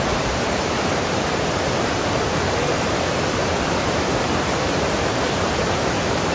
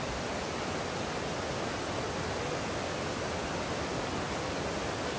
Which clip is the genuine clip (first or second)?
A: second